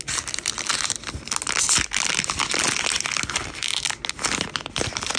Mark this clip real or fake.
real